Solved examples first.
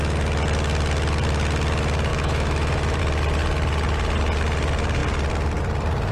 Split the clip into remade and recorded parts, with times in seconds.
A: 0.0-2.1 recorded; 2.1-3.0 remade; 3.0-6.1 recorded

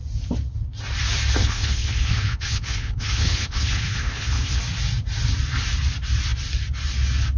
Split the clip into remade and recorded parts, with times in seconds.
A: 0.0-1.4 recorded; 1.4-4.6 remade; 4.6-7.4 recorded

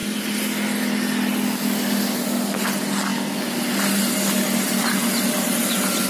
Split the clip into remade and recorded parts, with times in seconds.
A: 0.0-6.1 recorded